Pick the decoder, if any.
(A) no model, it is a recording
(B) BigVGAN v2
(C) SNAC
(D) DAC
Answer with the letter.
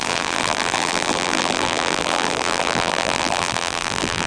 B